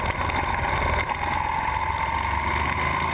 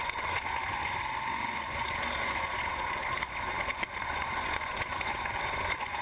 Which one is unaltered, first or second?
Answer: first